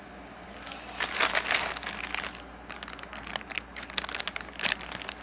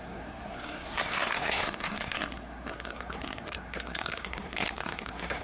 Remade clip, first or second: second